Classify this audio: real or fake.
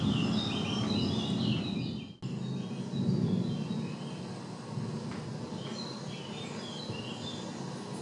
real